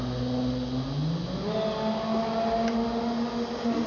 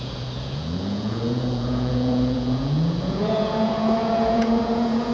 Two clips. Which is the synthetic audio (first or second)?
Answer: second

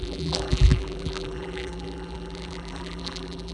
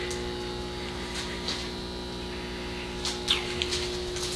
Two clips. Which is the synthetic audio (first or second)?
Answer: first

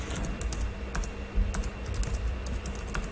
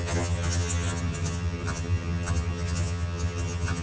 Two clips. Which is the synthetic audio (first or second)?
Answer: second